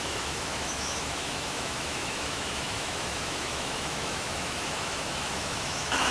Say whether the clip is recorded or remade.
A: remade